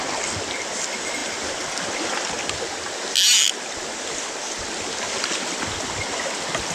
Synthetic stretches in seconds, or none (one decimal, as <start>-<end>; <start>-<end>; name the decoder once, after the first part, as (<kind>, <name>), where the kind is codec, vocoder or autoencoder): none

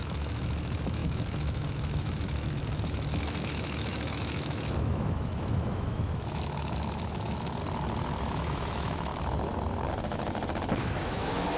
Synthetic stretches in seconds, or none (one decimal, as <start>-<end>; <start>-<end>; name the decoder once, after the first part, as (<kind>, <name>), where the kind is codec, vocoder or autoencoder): 0.0-7.6 (autoencoder, DAC-VAE); 8.3-9.1; 10.8-11.6

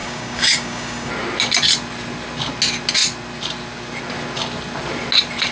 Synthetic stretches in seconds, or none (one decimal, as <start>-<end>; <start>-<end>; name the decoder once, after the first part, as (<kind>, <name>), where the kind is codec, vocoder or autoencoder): 0.0-1.1 (codec, DAC)

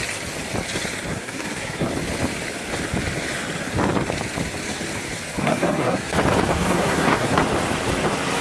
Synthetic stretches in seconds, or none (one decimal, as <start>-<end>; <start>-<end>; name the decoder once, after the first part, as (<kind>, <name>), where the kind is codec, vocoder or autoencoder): 1.1-1.9 (codec, SNAC); 5.4-6.1; 6.5-7.4